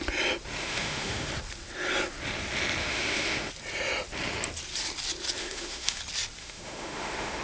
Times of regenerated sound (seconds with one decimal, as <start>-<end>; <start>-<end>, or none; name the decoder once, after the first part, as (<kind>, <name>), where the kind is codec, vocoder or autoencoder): 0.6-1.3 (autoencoder, DAC-VAE); 2.8-3.5; 5.4-6.0; 6.4-7.4